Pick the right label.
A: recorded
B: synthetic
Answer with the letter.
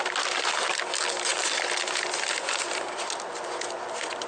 A